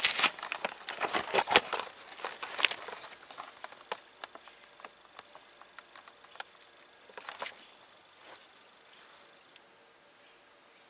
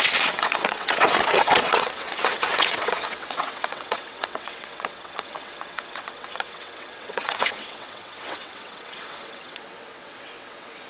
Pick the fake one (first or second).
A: second